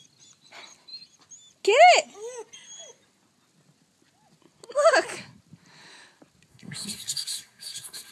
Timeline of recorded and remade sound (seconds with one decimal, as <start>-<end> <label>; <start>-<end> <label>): 0.0-6.5 recorded; 6.5-8.1 remade